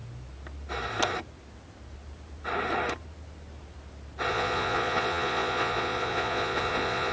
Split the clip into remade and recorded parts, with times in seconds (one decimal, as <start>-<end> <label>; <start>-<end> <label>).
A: 0.0-4.3 recorded; 4.3-7.1 remade